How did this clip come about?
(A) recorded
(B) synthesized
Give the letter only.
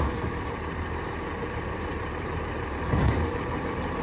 B